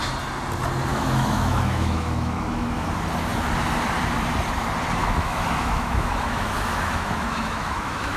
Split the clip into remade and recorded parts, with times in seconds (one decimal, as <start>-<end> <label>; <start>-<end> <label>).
0.0-0.9 recorded; 0.9-2.9 remade; 2.9-5.0 recorded; 5.0-8.2 remade